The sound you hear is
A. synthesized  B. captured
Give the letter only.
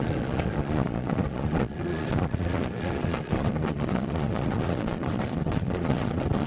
A